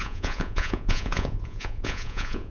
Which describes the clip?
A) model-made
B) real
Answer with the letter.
A